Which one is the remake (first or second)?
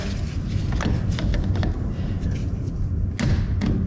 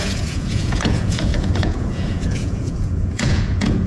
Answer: second